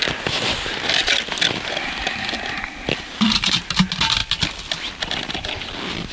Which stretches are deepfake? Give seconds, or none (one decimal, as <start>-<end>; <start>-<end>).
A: none